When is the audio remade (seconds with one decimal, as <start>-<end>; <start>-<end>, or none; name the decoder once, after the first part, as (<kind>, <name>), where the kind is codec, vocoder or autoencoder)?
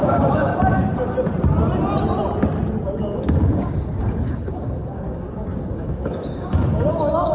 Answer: 0.0-0.5 (codec, DAC); 3.0-7.3